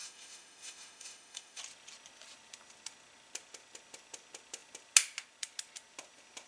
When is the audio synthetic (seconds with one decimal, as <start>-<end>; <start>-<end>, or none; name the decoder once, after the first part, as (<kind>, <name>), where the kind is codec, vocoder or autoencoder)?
0.0-1.6 (autoencoder, DAC-VAE)